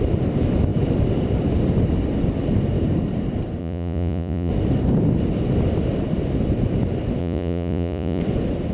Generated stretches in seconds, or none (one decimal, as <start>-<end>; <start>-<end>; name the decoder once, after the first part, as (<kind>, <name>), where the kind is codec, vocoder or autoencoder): 3.6-4.5 (vocoder, Vocos); 7.2-8.2